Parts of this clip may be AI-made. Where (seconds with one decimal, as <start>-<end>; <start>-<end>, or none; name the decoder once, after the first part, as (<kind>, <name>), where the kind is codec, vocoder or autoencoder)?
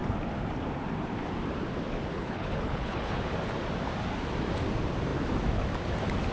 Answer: 2.1-3.2 (codec, HILCodec)